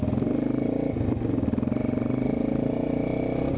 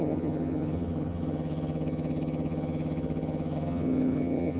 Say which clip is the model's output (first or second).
second